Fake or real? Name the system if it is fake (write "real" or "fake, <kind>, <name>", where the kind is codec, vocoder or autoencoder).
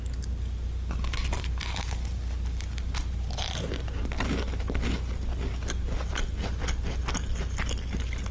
real